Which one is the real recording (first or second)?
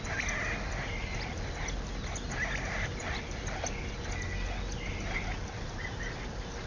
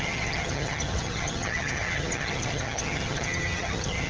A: first